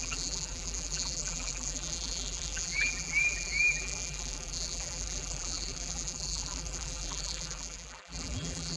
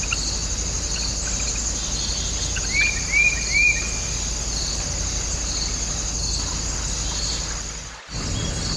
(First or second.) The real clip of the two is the second